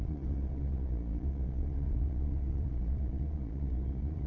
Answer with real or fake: fake